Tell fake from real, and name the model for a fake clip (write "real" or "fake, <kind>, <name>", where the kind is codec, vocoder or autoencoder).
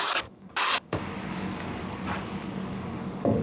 fake, codec, DAC